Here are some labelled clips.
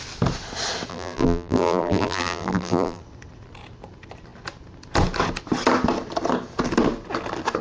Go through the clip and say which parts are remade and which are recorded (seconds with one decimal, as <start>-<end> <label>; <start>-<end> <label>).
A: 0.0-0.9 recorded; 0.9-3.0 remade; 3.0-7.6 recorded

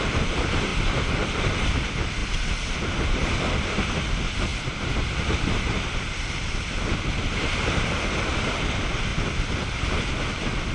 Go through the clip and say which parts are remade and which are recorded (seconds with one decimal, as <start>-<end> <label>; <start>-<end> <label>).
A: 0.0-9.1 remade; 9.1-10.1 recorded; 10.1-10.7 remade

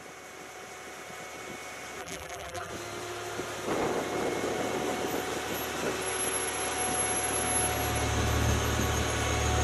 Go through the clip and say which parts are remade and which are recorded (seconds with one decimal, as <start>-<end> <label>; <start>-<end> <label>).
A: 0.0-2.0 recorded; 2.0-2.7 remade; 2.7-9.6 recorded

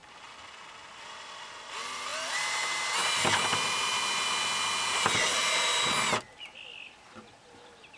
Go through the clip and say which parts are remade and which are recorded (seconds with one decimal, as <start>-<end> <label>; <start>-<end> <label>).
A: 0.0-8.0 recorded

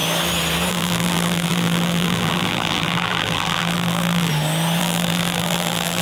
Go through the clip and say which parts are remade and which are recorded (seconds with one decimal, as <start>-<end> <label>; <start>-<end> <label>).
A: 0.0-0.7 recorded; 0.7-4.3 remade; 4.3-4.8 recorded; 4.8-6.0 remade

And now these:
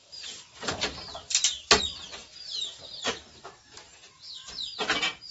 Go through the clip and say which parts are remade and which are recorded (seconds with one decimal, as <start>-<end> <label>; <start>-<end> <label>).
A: 0.0-2.2 recorded; 2.2-3.9 remade; 3.9-5.3 recorded

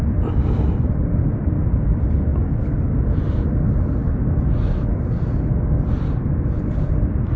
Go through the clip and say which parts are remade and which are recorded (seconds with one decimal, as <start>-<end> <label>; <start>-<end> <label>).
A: 0.0-2.3 remade; 2.3-6.6 recorded; 6.6-7.4 remade

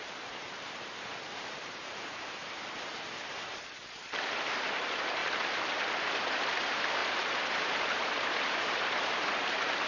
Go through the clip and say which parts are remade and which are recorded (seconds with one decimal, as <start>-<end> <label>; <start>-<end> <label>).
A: 0.0-5.2 remade; 5.2-6.0 recorded; 6.0-9.9 remade